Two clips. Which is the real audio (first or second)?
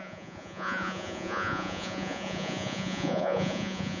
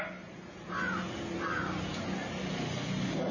second